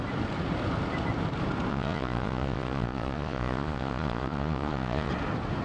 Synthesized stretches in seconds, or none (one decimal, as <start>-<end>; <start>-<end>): 1.7-5.1